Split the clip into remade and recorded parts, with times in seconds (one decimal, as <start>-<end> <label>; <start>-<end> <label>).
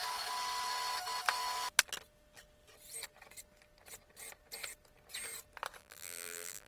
0.0-5.8 recorded; 5.8-6.7 remade